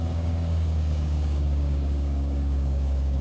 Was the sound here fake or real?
fake